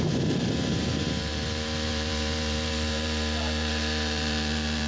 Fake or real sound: fake